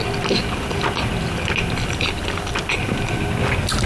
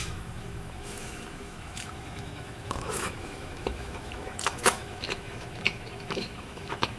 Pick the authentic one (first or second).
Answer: first